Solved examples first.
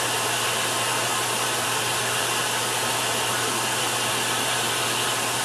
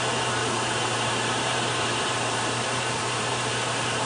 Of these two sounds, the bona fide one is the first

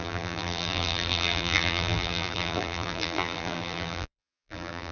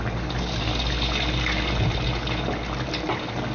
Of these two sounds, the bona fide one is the second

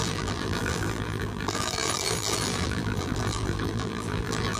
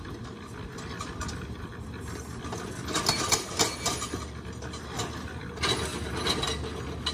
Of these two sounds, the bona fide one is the second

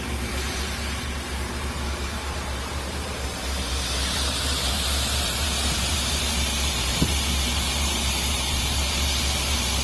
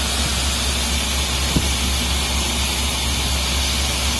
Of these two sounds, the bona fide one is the second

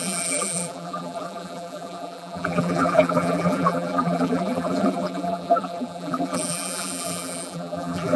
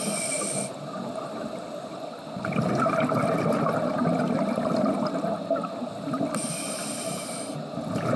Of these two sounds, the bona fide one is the second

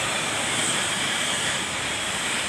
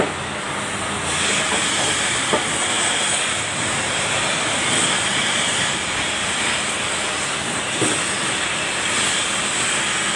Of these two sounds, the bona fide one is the second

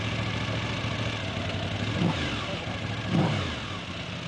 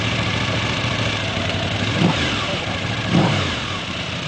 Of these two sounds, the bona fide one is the first